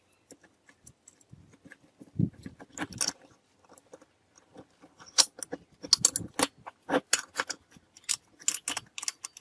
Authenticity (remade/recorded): recorded